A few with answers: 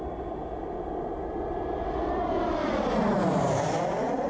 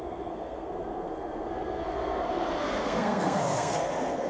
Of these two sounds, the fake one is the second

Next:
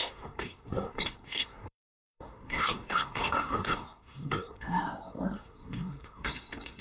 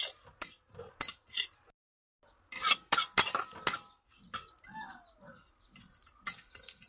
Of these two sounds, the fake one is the first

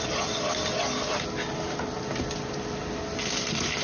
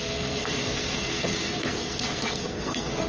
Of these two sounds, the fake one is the second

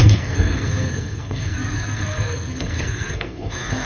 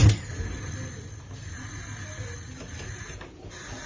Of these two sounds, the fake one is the first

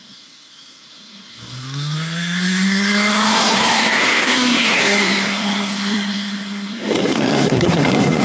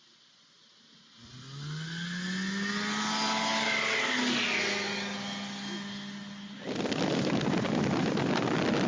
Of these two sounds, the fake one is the first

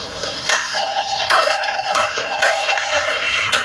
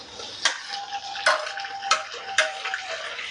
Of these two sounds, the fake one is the first